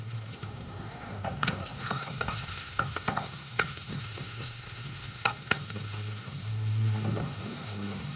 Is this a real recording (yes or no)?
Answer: no